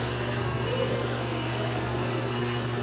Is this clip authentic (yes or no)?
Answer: no